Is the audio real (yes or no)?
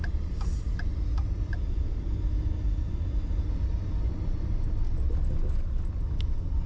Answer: yes